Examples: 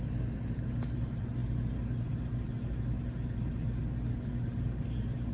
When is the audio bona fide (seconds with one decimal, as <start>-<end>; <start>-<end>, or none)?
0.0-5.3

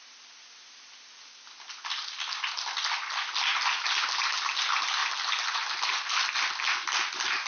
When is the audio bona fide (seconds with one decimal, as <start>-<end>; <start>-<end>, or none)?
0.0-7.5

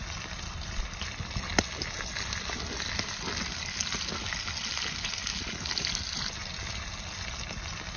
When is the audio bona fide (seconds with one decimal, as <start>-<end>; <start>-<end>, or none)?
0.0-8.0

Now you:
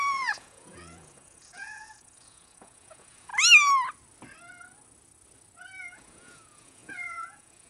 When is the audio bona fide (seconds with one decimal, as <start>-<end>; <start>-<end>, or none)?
3.3-5.8

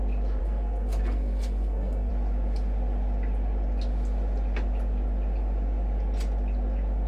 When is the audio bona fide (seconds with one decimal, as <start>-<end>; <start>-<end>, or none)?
0.0-0.4; 2.1-7.1